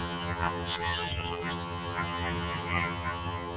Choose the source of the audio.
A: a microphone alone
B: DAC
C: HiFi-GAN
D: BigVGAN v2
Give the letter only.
C